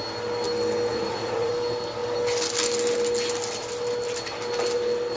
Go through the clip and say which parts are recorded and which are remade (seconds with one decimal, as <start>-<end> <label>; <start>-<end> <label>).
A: 0.0-0.9 recorded; 0.9-1.5 remade; 1.5-5.2 recorded